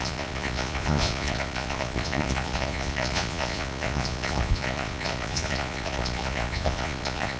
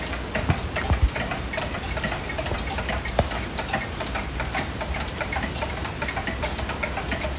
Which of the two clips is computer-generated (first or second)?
first